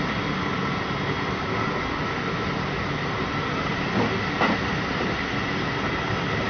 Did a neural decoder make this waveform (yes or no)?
no